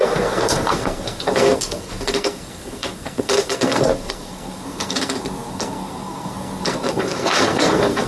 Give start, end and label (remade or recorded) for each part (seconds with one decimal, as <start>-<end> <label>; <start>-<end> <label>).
0.0-8.1 remade